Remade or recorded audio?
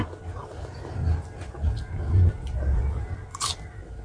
recorded